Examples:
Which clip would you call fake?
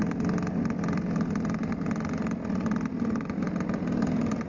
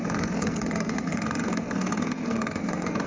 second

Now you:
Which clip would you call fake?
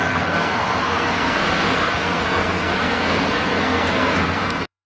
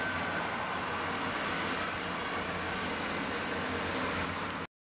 first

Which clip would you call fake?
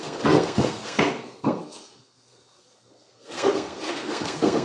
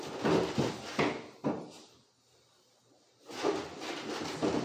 first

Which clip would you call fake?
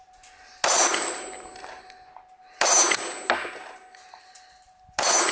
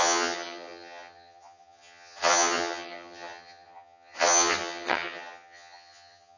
second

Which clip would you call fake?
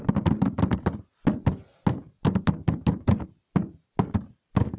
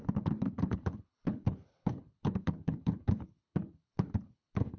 second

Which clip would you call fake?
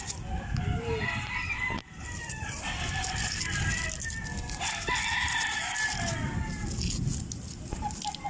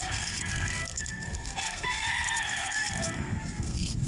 second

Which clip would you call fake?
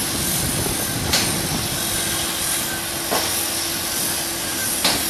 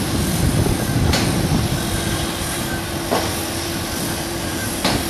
second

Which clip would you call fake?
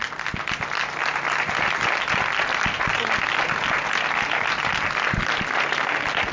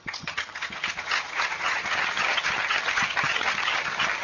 second